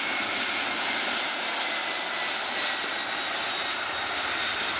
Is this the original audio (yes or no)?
yes